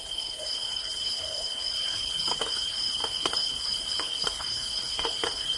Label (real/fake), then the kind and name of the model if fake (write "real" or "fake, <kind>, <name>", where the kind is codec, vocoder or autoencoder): fake, codec, HILCodec